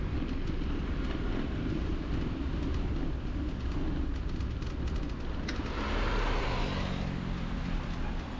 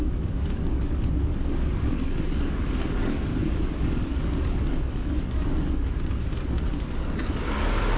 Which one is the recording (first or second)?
first